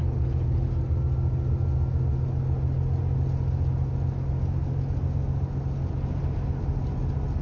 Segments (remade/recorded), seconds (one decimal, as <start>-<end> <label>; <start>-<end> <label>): 0.0-7.4 recorded